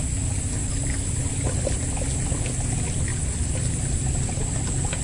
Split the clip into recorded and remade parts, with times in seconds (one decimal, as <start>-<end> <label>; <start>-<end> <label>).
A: 0.0-3.1 recorded; 3.1-4.6 remade; 4.6-5.0 recorded

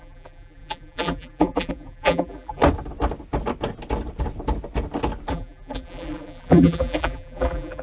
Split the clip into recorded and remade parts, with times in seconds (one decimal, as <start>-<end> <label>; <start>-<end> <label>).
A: 0.0-2.6 remade; 2.6-5.3 recorded; 5.3-7.8 remade

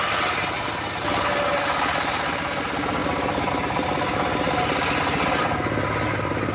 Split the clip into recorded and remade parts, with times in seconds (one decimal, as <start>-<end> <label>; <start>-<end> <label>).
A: 0.0-6.5 recorded